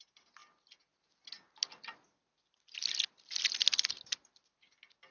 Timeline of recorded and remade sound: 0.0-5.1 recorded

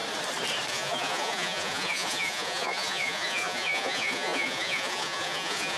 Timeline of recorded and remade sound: 0.0-0.7 recorded; 0.7-5.8 remade

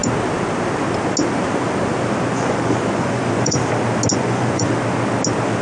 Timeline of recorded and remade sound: 0.0-2.3 recorded; 2.3-3.6 remade; 3.6-4.1 recorded; 4.1-4.7 remade; 4.7-5.6 recorded

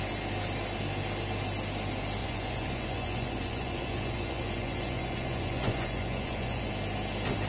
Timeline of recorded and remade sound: 0.0-2.2 recorded; 2.2-6.7 remade; 6.7-7.5 recorded